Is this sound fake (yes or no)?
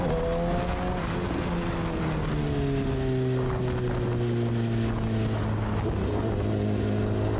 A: no